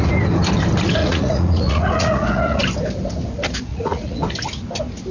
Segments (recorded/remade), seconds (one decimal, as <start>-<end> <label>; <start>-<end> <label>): 0.0-1.0 recorded; 1.0-2.6 remade; 2.6-3.7 recorded; 3.7-4.2 remade; 4.2-5.1 recorded